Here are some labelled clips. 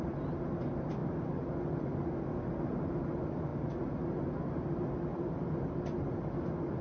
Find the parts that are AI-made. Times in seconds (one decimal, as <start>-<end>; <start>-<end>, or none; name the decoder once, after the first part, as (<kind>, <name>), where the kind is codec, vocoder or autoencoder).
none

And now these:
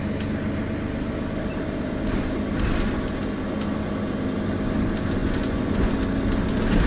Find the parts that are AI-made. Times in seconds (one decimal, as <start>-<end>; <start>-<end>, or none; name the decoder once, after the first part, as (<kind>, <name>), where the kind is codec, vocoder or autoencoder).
5.2-5.9 (vocoder, Vocos)

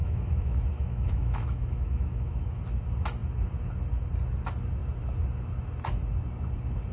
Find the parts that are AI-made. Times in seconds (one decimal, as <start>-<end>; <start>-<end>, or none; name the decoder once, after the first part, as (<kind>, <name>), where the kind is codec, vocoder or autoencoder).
0.0-2.6 (autoencoder, DAC-VAE)

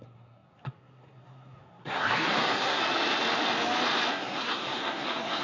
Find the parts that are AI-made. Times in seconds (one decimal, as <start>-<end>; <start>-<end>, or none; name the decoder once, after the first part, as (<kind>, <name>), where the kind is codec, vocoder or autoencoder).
0.0-2.8 (codec, SNAC); 4.1-5.4

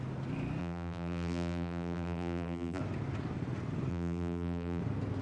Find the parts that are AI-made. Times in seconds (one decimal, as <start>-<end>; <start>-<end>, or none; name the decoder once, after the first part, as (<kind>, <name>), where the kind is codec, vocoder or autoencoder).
0.6-2.8 (vocoder, BigVGAN v2); 3.9-4.8

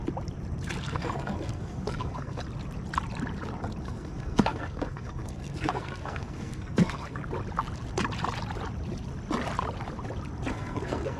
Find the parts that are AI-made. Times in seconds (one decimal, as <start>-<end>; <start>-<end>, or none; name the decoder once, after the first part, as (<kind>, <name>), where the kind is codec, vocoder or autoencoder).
0.8-2.4 (codec, SNAC); 3.8-7.2; 10.5-11.2